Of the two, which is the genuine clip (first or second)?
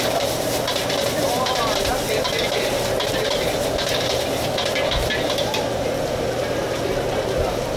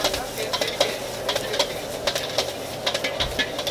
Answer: second